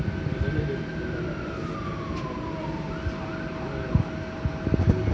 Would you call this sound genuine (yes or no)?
yes